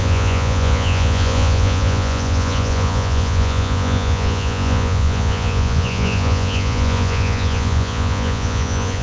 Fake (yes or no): yes